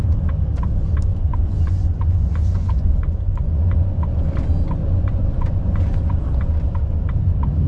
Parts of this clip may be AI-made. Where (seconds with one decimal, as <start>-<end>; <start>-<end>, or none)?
1.1-4.0; 4.8-6.2